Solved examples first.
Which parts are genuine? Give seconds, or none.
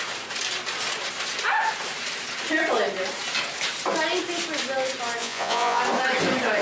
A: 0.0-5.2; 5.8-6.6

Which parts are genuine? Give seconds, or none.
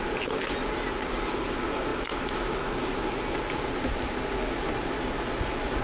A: 0.0-5.8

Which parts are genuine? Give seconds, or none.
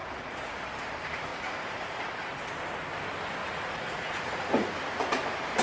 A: 0.7-1.3; 2.3-3.4; 4.7-5.6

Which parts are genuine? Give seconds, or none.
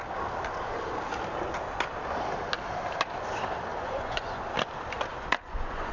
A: 0.0-3.7; 4.4-5.1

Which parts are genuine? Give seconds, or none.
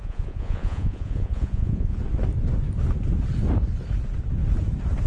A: 2.0-5.1